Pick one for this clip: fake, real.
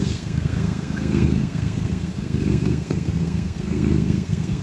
fake